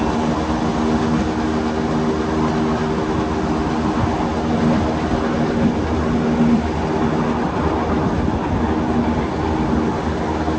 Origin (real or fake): real